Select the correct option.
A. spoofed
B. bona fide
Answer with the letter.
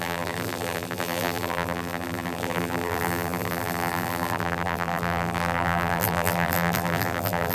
A